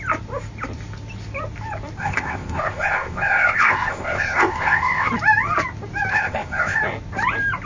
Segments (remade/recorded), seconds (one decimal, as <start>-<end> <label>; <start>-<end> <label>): 0.0-2.0 recorded; 2.0-5.1 remade; 5.1-6.1 recorded; 6.1-6.8 remade; 6.8-7.7 recorded